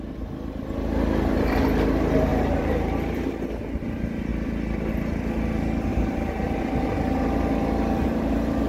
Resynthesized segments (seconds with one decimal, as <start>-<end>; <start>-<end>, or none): 2.3-3.3; 5.9-8.7